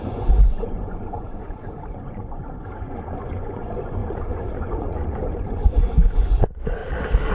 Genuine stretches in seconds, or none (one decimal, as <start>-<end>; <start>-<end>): 6.8-7.3